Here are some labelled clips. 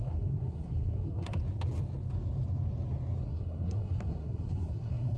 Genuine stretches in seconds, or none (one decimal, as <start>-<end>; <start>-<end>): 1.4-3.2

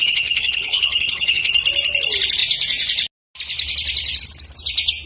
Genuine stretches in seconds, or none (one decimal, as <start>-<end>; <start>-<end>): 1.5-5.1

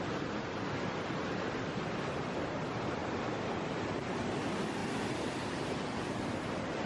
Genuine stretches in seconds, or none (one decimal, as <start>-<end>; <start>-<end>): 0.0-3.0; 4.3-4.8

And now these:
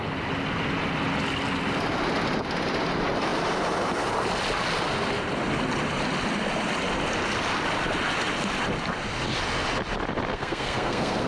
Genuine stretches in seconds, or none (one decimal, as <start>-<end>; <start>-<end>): 0.0-10.3

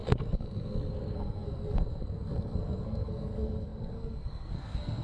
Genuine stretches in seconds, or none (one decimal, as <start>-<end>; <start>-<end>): none

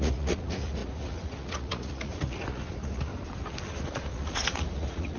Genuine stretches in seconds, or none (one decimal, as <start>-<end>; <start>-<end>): 3.1-3.7